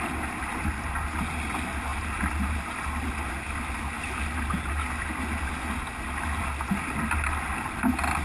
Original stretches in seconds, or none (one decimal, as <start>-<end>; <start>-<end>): 0.0-8.2